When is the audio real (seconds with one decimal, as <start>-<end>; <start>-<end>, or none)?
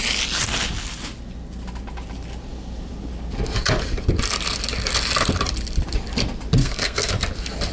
0.0-6.6; 7.1-7.7